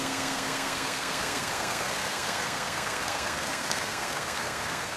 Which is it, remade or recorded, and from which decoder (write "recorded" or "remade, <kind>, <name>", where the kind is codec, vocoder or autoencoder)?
remade, codec, SNAC